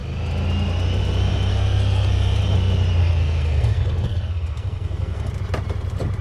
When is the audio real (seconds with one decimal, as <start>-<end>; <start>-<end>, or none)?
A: 0.0-1.5; 2.4-3.0; 5.3-6.2